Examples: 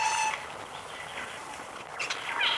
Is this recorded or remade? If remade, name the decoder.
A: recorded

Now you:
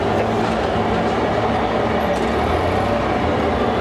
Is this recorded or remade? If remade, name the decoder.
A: recorded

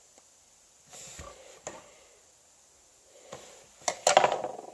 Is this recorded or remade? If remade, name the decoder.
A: recorded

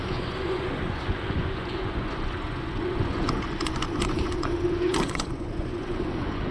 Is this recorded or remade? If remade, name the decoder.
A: remade, vocoder, Vocos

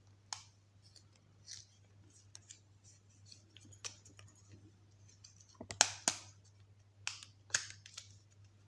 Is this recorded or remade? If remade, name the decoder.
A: recorded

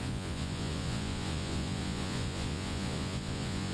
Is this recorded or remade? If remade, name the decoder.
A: remade, vocoder, Vocos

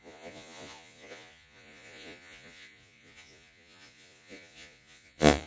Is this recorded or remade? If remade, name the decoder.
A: remade, vocoder, Vocos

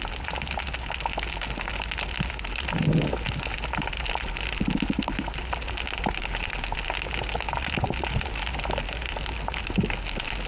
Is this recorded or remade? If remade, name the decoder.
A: recorded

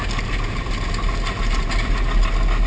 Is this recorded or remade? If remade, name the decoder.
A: recorded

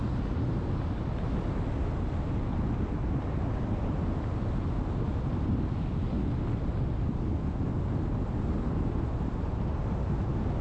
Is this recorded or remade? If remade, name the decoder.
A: recorded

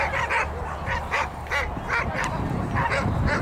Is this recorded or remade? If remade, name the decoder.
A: recorded